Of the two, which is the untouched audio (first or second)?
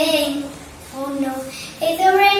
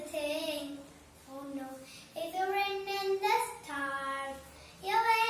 second